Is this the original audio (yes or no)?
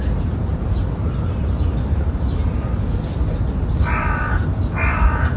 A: yes